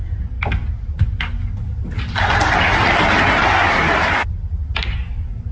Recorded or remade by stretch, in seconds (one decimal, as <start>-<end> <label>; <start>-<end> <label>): 0.0-5.5 recorded